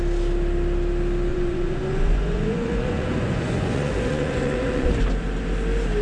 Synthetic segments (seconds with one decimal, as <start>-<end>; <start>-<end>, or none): 1.3-4.9